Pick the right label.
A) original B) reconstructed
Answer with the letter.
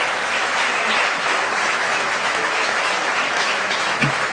B